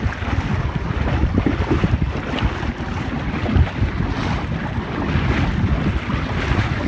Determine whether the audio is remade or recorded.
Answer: recorded